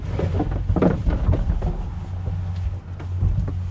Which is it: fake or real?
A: real